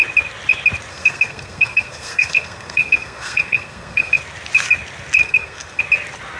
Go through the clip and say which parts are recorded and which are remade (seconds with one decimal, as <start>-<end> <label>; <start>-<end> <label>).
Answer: 0.0-0.9 recorded; 0.9-4.2 remade; 4.2-5.2 recorded; 5.2-5.8 remade; 5.8-6.4 recorded